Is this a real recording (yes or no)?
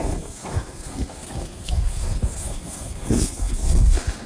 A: no